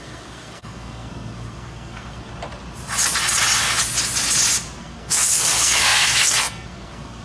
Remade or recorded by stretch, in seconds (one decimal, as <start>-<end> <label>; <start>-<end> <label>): 0.0-2.3 remade; 2.3-4.8 recorded; 4.8-7.2 remade